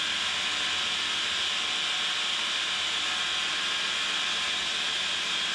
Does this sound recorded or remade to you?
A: recorded